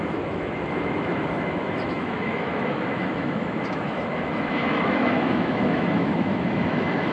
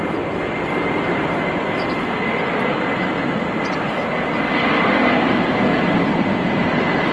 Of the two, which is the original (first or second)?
second